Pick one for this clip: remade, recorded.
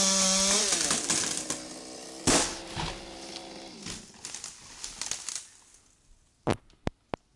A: recorded